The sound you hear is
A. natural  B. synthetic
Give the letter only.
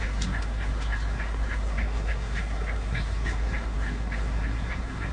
B